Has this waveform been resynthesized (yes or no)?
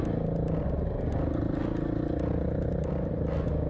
no